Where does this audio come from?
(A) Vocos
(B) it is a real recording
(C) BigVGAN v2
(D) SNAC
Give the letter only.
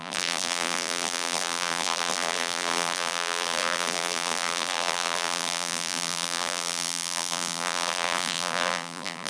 C